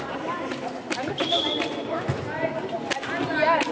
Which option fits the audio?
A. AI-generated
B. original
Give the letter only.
B